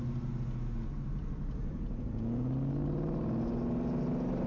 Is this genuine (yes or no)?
yes